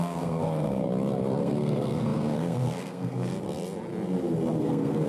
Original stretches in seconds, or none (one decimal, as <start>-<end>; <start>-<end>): 0.9-1.4; 3.3-4.6